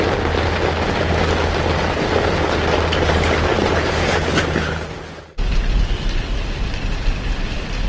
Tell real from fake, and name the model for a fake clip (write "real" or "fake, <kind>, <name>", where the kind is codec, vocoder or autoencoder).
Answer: real